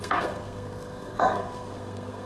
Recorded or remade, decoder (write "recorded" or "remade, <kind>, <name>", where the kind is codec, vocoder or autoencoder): remade, codec, SNAC